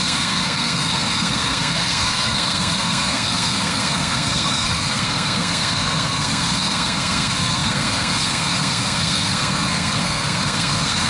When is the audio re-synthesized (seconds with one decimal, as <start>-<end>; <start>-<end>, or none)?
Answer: 0.0-11.1